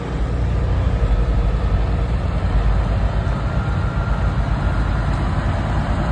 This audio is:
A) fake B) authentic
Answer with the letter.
B